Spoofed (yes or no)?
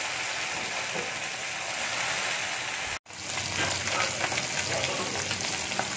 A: no